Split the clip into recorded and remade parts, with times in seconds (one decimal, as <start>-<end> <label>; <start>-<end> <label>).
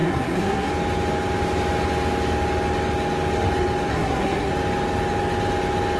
0.0-0.7 remade; 0.7-3.9 recorded; 3.9-4.5 remade; 4.5-6.0 recorded